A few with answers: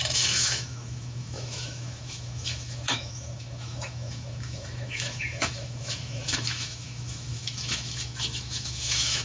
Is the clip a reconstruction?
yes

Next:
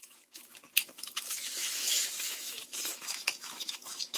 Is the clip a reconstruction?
yes